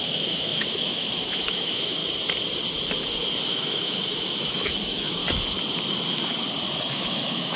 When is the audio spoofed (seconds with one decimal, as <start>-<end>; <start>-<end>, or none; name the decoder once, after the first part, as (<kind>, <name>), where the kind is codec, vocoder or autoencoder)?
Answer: 0.0-2.0 (autoencoder, DAC-VAE); 3.5-5.2; 6.9-7.6